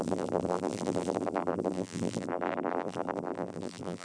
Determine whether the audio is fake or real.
fake